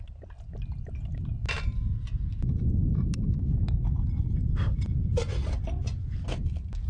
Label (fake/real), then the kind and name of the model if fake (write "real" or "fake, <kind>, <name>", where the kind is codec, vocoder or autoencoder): real